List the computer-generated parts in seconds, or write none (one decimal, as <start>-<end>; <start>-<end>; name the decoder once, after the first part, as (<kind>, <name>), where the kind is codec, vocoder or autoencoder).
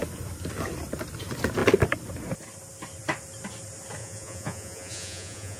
4.0-5.6 (vocoder, Vocos)